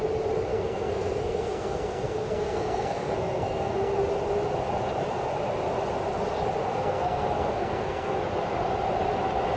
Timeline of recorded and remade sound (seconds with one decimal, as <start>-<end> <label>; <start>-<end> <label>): 0.0-0.5 recorded; 0.5-3.9 remade; 3.9-6.6 recorded; 6.6-8.2 remade; 8.2-9.6 recorded